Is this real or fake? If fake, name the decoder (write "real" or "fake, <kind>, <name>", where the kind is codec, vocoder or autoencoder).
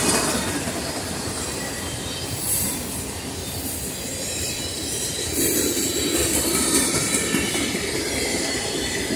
fake, vocoder, BigVGAN v2